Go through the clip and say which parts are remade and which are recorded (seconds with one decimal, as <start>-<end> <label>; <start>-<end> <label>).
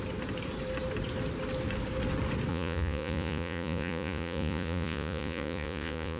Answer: 0.0-2.5 recorded; 2.5-6.2 remade